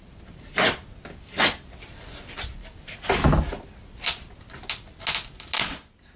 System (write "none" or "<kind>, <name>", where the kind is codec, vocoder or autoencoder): none